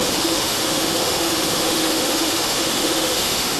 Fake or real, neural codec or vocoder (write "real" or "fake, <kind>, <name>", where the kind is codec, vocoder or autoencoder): fake, autoencoder, DAC-VAE